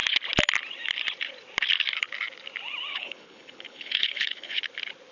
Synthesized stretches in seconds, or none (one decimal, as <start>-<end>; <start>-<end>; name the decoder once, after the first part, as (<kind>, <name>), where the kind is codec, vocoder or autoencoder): 2.9-4.6 (codec, HILCodec)